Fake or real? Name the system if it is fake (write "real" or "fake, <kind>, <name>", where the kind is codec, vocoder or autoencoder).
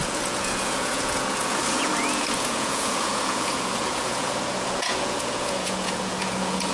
fake, vocoder, Vocos